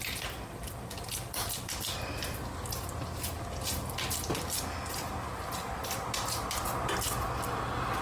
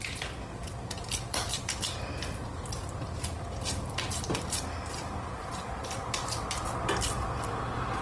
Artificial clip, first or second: second